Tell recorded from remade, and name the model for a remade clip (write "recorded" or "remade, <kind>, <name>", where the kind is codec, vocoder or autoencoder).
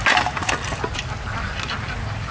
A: recorded